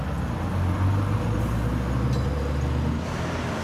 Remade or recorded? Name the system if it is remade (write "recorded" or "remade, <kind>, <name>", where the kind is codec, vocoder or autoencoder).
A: recorded